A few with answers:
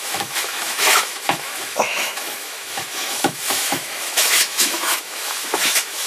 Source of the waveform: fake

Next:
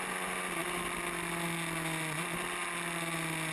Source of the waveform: real